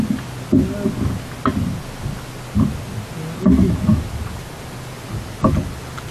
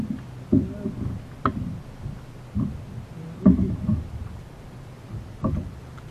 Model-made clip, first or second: second